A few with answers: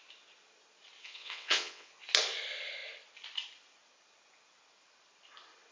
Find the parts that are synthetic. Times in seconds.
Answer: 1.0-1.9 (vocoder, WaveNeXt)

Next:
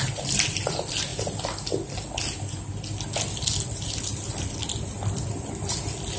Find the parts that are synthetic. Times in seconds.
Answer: none

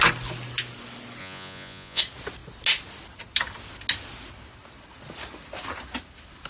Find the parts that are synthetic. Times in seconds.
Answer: 1.2-2.0 (vocoder, Vocos)

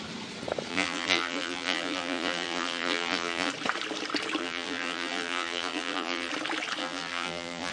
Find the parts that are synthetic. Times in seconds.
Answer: 0.7-3.5 (vocoder, BigVGAN v2); 4.4-6.3; 6.8-7.7

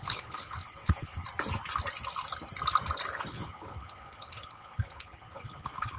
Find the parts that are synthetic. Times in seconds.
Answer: 0.0-1.2 (codec, HILCodec); 3.1-6.0

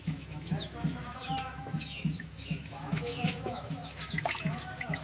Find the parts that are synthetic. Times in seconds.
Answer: 0.0-5.0 (autoencoder, DAC-VAE)

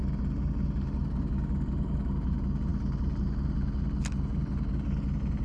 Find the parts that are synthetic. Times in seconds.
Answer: none

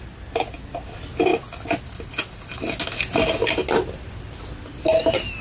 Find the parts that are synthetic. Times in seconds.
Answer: none